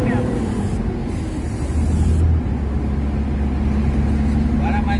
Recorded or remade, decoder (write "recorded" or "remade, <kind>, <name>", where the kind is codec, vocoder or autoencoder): recorded